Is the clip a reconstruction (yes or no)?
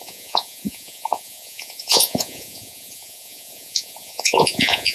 yes